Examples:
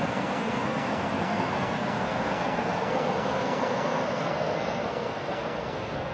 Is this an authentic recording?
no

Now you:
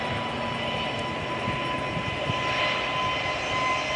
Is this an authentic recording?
yes